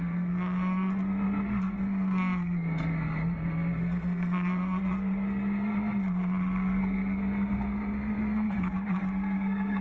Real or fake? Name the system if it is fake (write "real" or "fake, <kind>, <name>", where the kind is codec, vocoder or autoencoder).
fake, codec, SNAC